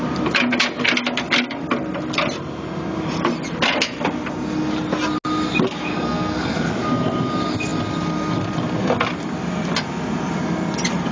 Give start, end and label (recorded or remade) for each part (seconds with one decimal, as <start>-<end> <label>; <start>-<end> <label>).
0.0-5.9 recorded; 5.9-6.7 remade; 6.7-11.1 recorded